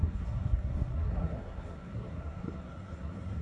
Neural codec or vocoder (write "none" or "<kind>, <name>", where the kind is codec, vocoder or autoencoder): codec, SNAC